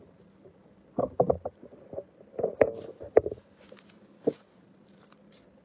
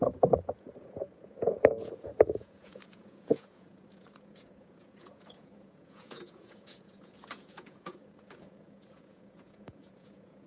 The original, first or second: first